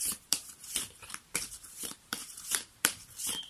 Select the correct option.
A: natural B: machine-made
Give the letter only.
B